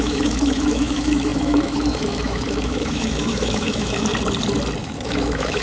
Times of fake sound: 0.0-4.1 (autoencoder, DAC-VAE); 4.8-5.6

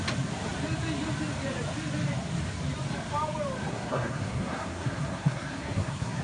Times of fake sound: 3.7-6.2 (codec, SNAC)

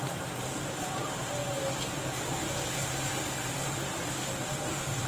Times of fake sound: none

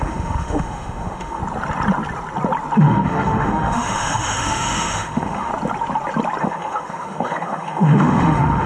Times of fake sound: 0.0-1.4 (autoencoder, DAC-VAE); 2.8-5.5; 6.4-8.7

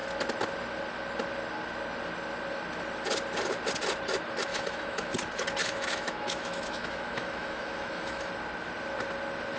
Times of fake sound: 4.5-5.1 (autoencoder, DAC-VAE); 5.6-8.3

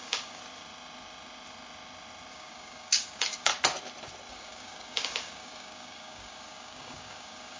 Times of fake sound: 0.0-0.4 (codec, DAC); 2.3-3.5; 4.3-7.6